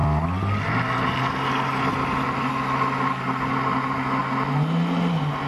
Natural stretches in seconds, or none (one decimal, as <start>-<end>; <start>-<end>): 0.0-5.5